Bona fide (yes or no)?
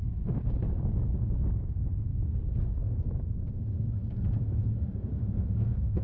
no